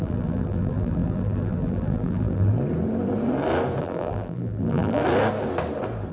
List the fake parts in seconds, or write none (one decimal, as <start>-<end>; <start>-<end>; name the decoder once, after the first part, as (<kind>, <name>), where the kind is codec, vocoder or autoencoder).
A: 0.0-2.5 (vocoder, BigVGAN v2); 3.8-5.0